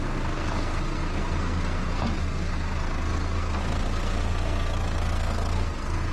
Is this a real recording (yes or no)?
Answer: no